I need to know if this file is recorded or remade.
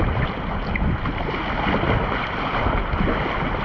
recorded